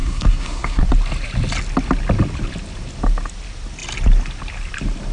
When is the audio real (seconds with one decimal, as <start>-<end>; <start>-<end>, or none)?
0.8-5.1